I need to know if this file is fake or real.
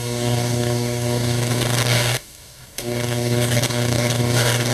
fake